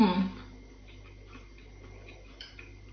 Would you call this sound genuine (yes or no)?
yes